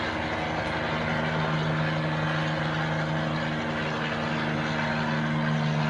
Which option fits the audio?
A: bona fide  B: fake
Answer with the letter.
A